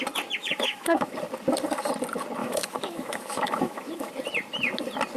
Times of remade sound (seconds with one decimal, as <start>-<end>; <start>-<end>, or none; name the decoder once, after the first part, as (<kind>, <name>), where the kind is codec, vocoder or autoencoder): 0.4-1.1 (autoencoder, DAC-VAE); 2.4-4.1